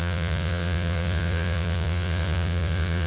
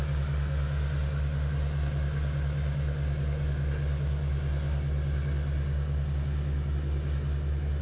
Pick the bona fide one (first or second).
second